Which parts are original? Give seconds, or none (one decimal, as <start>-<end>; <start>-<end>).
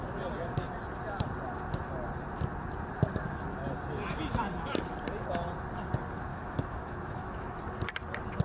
0.0-6.3; 7.6-8.4